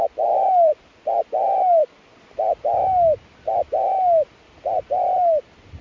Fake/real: real